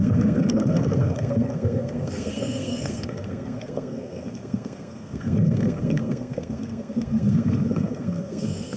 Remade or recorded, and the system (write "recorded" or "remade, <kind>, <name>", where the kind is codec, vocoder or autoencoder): remade, codec, SNAC